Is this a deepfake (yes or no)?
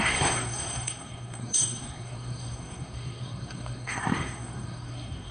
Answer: yes